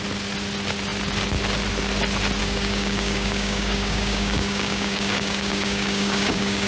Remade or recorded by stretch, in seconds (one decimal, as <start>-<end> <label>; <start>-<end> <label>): 0.0-2.4 recorded; 2.4-6.7 remade